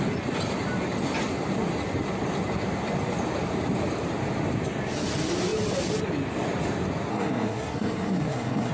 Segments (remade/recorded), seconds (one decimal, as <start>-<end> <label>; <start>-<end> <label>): 0.0-7.1 recorded; 7.1-8.7 remade